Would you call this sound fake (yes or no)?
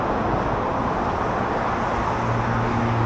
no